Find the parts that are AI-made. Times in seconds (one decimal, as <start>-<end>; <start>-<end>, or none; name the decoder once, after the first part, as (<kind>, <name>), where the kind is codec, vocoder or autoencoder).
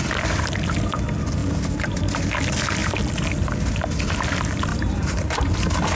1.4-2.0 (vocoder, BigVGAN v2); 4.7-5.5